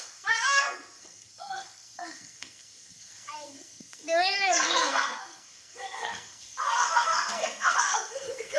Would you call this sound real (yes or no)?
no